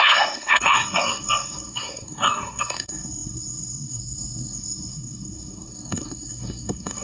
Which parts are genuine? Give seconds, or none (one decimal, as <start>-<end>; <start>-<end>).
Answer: none